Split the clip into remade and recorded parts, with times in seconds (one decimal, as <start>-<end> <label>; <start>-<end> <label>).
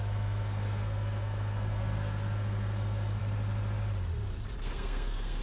0.0-3.2 remade; 3.2-4.6 recorded; 4.6-5.4 remade